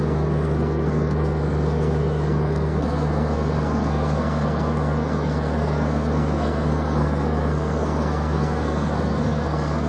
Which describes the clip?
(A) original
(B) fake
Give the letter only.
B